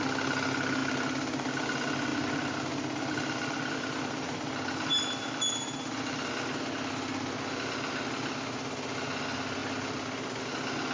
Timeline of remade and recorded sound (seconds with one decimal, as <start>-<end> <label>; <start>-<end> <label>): 0.0-2.1 recorded; 2.1-6.5 remade; 6.5-10.9 recorded